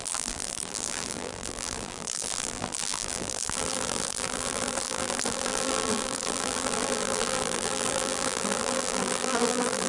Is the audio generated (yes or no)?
yes